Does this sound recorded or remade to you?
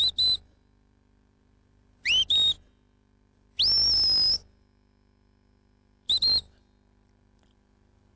recorded